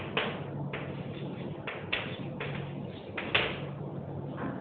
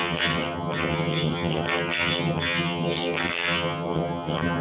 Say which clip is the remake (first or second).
second